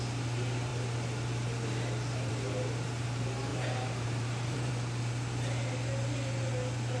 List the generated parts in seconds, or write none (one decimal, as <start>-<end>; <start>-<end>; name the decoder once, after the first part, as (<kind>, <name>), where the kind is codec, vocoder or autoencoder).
3.5-4.7 (vocoder, BigVGAN v2)